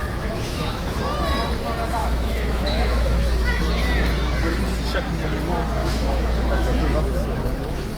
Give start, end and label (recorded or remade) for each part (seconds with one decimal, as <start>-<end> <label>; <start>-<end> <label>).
0.0-1.0 remade; 1.0-2.0 recorded; 2.0-3.6 remade; 3.6-5.8 recorded; 5.8-8.0 remade